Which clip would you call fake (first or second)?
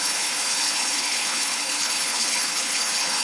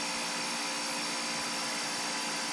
first